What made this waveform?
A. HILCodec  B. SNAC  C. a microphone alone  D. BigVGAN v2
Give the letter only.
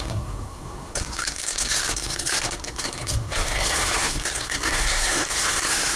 B